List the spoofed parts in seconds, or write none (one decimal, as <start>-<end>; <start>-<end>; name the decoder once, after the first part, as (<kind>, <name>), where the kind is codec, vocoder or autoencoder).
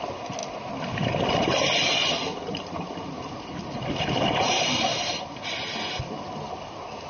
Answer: none